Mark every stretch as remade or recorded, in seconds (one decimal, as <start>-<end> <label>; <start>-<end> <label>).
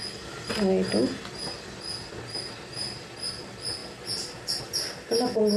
0.0-5.6 recorded